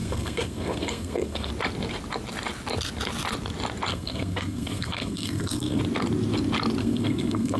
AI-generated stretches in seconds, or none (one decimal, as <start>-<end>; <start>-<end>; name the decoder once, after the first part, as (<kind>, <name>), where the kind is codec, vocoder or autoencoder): 0.0-1.5 (codec, SNAC); 3.9-5.8; 6.8-7.6